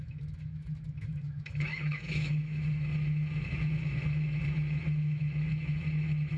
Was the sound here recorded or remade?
remade